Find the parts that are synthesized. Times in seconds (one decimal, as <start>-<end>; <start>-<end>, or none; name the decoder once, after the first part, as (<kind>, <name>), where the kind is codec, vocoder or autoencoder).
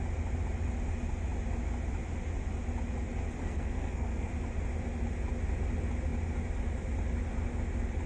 3.4-4.3 (codec, SNAC)